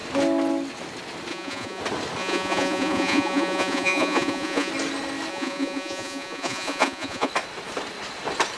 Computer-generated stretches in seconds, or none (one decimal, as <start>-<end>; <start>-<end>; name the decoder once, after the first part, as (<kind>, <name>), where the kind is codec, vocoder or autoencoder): 1.3-1.8 (vocoder, Vocos); 2.2-4.7; 5.3-7.3